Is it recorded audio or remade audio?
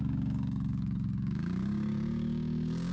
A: remade